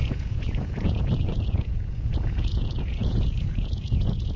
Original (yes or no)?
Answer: no